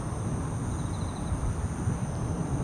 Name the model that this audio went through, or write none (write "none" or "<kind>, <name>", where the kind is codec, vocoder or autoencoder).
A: none